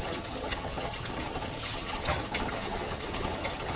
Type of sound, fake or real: fake